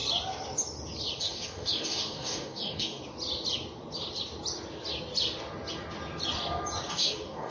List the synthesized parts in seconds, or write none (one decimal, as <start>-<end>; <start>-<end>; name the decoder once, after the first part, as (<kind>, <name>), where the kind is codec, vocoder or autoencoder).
1.2-3.0 (codec, DAC); 6.9-7.5